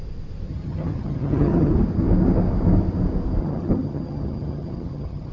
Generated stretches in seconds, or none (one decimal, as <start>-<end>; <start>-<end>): 0.5-1.7; 3.4-5.3